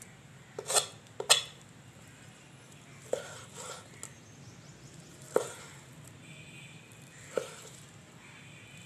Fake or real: real